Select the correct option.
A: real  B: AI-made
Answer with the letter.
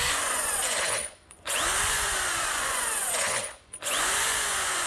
B